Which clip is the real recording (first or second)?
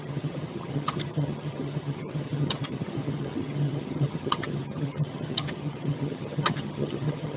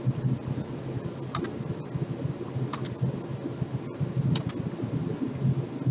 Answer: second